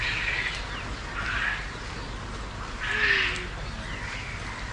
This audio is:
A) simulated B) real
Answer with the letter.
B